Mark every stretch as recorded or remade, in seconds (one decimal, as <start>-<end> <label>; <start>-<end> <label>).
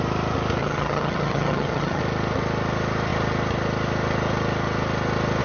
0.0-0.6 recorded; 0.6-2.0 remade; 2.0-5.4 recorded